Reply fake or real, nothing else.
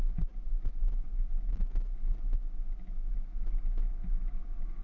real